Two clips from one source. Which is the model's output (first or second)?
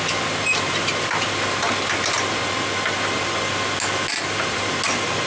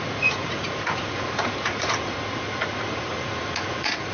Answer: second